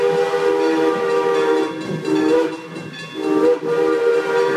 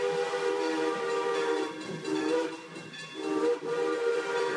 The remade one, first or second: second